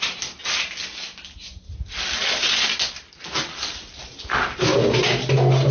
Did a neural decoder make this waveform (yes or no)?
no